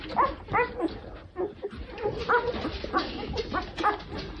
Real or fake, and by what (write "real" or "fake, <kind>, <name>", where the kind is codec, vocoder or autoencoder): real